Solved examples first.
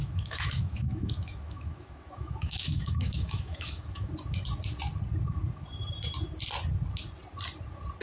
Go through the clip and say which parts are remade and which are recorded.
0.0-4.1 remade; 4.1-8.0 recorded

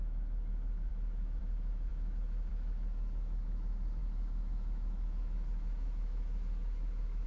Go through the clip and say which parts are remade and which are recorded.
0.0-7.3 remade

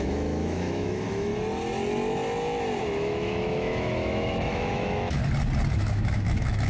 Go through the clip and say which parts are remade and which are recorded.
0.0-1.3 remade; 1.3-2.8 recorded; 2.8-5.2 remade; 5.2-5.7 recorded; 5.7-6.7 remade

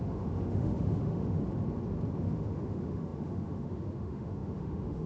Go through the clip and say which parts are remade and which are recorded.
0.0-1.4 remade; 1.4-2.2 recorded; 2.2-5.1 remade

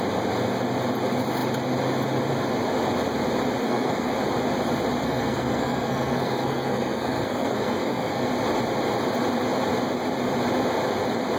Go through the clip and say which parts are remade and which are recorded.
0.0-3.6 recorded; 3.6-4.1 remade; 4.1-5.0 recorded; 5.0-8.3 remade; 8.3-11.4 recorded

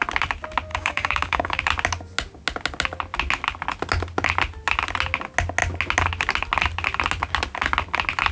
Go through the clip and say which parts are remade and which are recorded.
0.0-0.7 recorded; 0.7-1.6 remade; 1.6-8.3 recorded

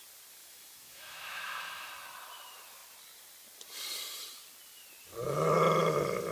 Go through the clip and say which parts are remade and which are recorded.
0.0-0.4 recorded; 0.4-1.9 remade; 1.9-6.3 recorded